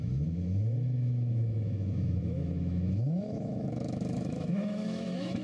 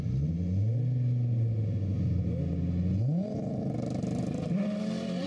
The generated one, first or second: first